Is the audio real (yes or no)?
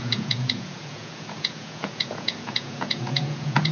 no